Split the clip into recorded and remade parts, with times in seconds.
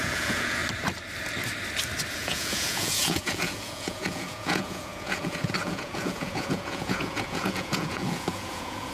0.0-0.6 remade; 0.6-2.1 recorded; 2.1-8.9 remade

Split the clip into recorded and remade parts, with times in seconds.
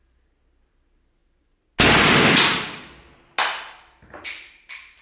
0.0-5.0 recorded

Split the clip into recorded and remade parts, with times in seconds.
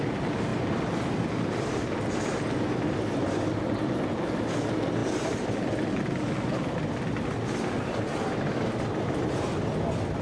0.0-10.2 recorded